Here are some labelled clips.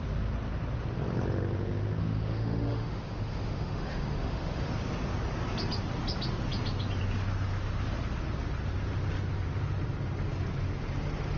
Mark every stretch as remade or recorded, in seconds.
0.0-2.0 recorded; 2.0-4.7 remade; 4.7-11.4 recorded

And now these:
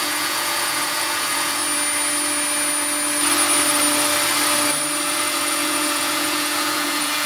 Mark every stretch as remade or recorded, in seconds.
0.0-1.6 remade; 1.6-5.1 recorded; 5.1-7.3 remade

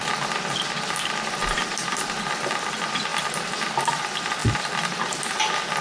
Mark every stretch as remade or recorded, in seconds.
0.0-1.4 recorded; 1.4-2.0 remade; 2.0-4.4 recorded; 4.4-5.2 remade; 5.2-5.8 recorded

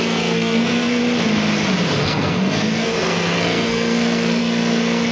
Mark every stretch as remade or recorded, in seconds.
0.0-1.0 remade; 1.0-2.0 recorded; 2.0-5.1 remade